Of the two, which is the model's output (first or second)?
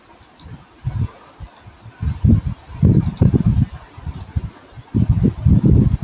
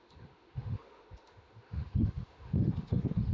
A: second